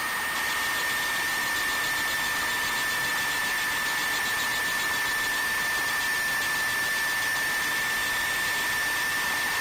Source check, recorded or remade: recorded